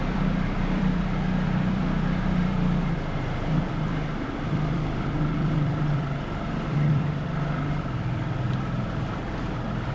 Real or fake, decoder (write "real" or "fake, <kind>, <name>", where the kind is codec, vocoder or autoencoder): fake, vocoder, BigVGAN v2